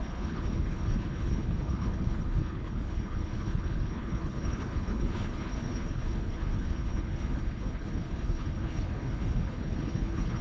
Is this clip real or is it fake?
fake